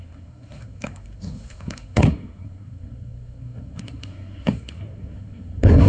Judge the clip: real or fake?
fake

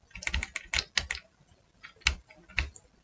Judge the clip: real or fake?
real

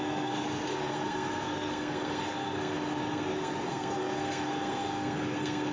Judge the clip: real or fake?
fake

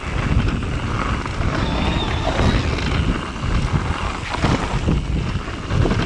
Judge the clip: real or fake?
real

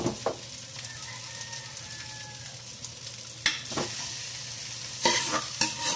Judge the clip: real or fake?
real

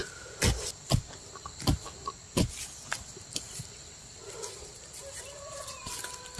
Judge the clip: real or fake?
real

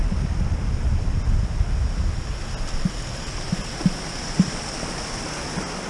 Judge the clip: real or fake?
real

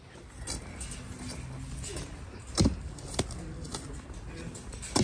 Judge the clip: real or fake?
real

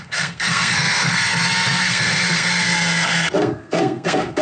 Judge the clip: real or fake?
fake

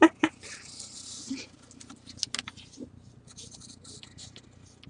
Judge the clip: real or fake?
real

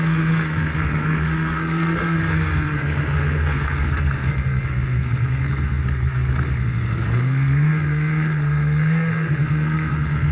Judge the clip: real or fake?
fake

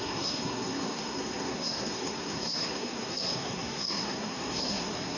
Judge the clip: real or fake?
fake